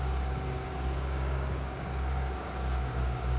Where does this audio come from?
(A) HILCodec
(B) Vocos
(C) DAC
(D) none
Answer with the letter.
C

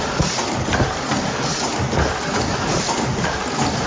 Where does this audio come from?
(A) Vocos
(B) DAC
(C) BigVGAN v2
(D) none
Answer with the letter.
D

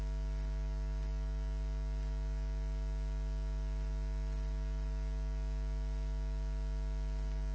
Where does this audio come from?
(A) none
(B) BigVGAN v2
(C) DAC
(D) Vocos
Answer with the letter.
A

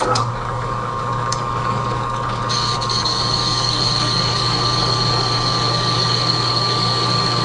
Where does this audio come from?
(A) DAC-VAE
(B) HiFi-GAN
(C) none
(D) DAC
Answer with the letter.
D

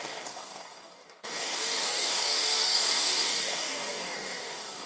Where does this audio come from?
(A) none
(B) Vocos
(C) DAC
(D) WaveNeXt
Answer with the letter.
C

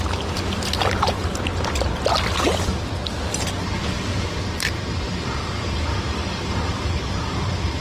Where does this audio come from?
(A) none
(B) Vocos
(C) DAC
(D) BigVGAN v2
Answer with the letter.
A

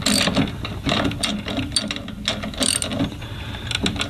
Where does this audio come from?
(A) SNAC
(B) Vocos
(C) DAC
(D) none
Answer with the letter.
D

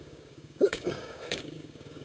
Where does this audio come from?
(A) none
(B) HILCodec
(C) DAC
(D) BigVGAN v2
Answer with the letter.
C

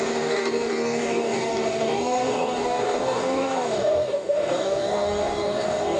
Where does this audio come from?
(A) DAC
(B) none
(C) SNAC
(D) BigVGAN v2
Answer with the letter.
A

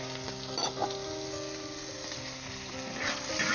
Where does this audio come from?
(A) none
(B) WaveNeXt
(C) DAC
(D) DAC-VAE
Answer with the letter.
A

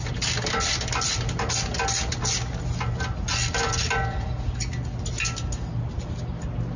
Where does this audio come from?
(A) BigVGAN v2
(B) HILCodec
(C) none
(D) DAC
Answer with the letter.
C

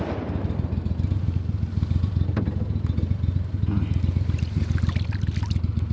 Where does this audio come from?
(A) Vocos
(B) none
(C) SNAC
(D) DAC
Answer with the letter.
B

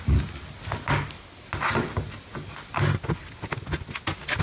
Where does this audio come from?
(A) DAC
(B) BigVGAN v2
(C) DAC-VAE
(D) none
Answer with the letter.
D